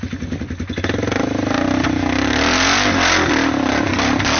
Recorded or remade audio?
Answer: recorded